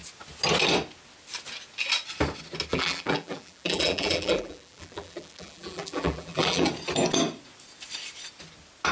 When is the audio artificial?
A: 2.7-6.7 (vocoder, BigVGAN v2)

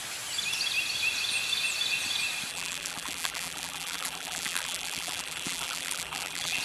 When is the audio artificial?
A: 2.5-6.6 (vocoder, BigVGAN v2)